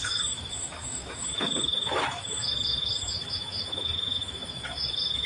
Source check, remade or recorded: remade